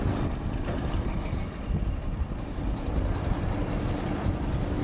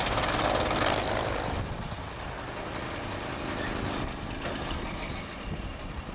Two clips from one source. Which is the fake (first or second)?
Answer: first